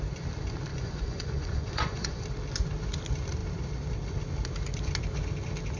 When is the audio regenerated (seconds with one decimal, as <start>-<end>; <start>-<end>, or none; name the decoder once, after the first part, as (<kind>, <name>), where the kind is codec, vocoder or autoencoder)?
0.7-2.2 (vocoder, Vocos)